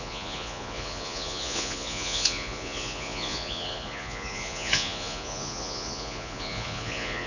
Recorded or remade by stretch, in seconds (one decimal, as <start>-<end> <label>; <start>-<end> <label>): 0.0-7.3 remade